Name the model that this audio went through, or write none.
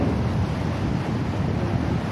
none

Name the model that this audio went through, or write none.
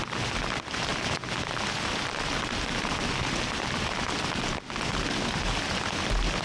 none